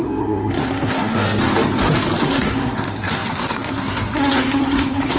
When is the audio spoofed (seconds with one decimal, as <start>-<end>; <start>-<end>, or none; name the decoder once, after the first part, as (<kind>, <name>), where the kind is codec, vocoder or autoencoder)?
0.0-1.4 (codec, SNAC); 2.2-5.2